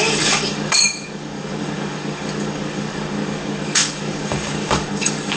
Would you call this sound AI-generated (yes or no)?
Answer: yes